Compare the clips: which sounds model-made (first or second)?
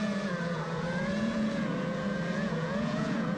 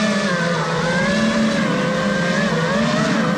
first